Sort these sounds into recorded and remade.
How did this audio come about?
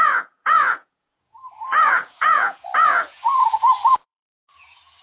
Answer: remade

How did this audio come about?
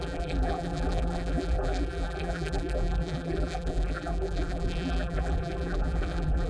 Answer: remade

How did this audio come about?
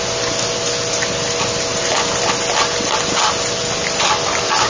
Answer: recorded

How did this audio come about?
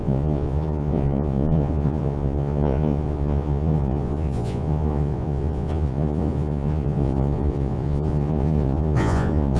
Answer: remade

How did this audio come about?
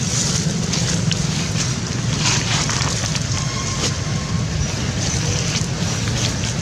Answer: recorded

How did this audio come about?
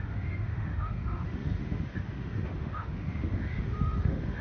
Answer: remade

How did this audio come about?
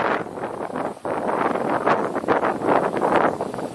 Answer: recorded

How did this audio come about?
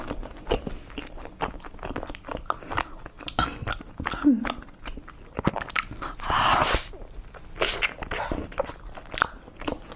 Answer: recorded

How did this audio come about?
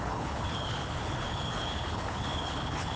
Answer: remade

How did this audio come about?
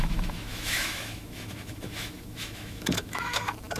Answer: remade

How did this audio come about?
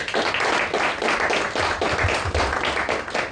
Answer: recorded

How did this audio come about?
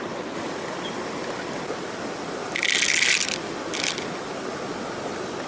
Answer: recorded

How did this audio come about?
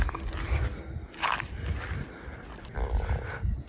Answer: recorded